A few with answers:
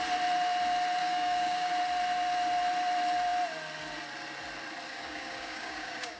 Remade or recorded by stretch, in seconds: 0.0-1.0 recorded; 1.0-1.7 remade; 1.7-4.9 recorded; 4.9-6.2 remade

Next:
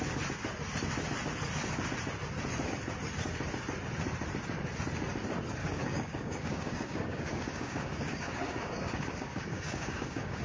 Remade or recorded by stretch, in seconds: 0.0-5.6 recorded; 5.6-10.4 remade

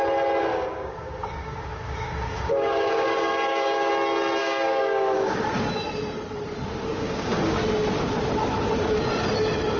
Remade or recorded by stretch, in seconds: 0.0-0.5 recorded; 0.5-3.9 remade; 3.9-4.4 recorded; 4.4-5.5 remade; 5.5-7.0 recorded; 7.0-7.6 remade; 7.6-9.8 recorded

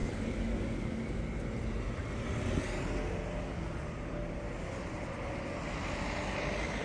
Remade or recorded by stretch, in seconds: 0.0-1.2 remade; 1.2-6.8 recorded

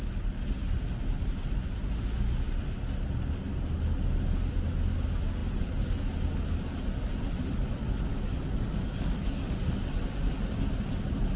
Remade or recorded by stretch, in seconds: 0.0-8.1 recorded; 8.1-10.0 remade; 10.0-11.4 recorded

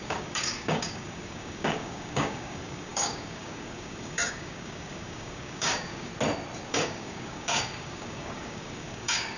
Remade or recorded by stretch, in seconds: 0.0-6.1 remade; 6.1-6.7 recorded; 6.7-9.4 remade